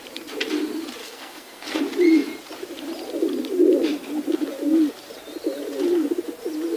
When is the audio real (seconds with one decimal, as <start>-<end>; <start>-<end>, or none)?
0.0-1.0; 1.8-6.8